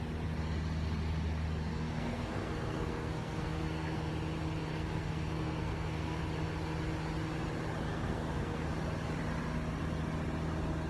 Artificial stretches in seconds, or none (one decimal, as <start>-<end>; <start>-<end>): 1.7-4.1; 4.7-6.2; 7.9-8.7